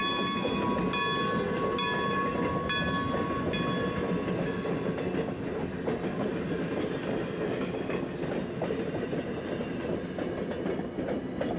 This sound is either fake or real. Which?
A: real